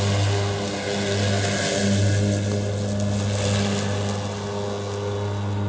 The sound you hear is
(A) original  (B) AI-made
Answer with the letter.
A